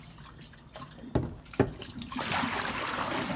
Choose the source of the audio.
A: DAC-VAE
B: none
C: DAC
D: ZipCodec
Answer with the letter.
B